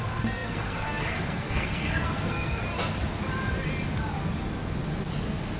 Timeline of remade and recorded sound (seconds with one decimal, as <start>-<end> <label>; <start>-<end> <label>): 0.0-2.6 remade; 2.6-5.6 recorded

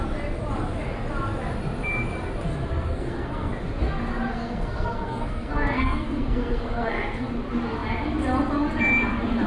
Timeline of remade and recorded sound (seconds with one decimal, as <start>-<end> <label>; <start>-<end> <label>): 0.0-2.7 recorded; 2.7-3.5 remade; 3.5-4.3 recorded; 4.3-7.3 remade; 7.3-9.5 recorded